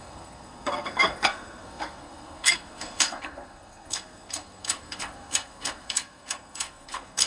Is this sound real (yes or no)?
no